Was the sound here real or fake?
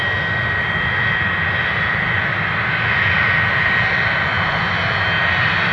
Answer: real